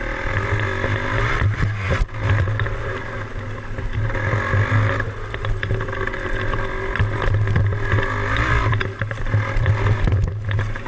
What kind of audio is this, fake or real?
real